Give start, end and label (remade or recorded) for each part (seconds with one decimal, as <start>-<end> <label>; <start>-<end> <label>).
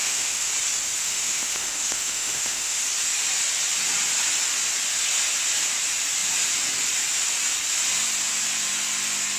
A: 0.0-0.5 remade; 0.5-1.0 recorded; 1.0-2.8 remade; 2.8-9.4 recorded